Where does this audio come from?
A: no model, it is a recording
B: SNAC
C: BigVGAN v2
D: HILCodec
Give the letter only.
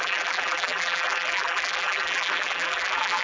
C